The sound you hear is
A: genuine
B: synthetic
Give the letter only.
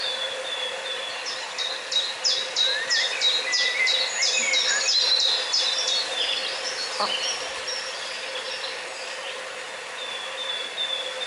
A